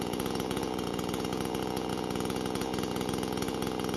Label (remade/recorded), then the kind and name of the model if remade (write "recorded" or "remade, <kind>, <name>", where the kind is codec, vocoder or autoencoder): remade, vocoder, Vocos